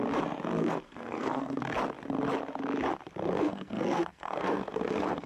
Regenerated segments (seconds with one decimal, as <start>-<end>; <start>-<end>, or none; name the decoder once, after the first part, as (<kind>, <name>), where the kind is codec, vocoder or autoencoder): 0.6-1.6 (codec, SNAC); 3.2-5.3

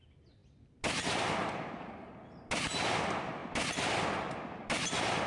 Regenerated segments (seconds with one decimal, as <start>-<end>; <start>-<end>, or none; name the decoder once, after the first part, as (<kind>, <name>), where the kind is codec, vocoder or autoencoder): none

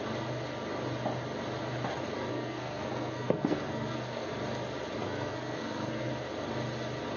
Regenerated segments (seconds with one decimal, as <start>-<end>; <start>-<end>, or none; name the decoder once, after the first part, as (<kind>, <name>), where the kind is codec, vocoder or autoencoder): 2.3-4.3 (codec, SNAC); 5.0-6.1

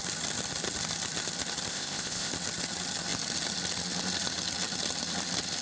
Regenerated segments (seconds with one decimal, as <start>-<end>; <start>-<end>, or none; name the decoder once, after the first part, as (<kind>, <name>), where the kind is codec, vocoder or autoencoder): 1.7-2.3 (codec, ZipCodec)

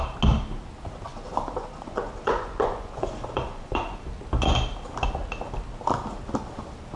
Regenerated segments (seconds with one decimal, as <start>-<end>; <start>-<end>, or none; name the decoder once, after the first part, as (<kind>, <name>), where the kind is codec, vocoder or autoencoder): 1.1-4.0 (vocoder, Vocos)

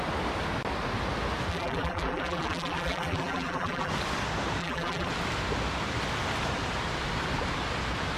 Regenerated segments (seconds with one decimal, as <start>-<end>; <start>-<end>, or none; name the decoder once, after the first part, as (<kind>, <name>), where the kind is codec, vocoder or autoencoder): 1.5-3.9 (vocoder, BigVGAN v2); 4.6-5.1

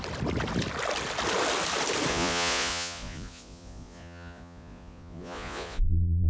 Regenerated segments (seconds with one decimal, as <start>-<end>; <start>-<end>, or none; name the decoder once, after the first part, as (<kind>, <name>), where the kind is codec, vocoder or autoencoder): 2.1-6.3 (vocoder, Vocos)